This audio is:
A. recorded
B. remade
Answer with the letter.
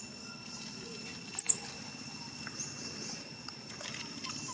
A